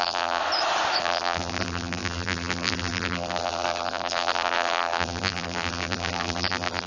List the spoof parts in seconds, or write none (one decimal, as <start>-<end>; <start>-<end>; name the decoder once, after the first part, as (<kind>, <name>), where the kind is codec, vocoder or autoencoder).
0.0-0.4 (vocoder, BigVGAN v2); 1.0-6.9